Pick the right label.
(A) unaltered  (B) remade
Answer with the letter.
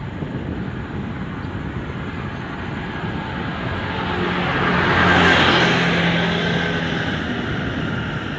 A